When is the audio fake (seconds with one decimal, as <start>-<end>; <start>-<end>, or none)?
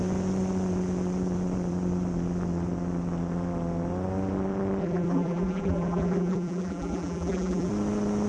4.8-7.7